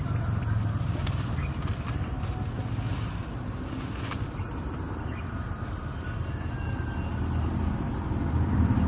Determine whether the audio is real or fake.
fake